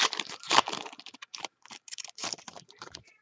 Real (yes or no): no